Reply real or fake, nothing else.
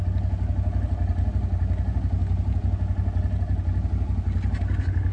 real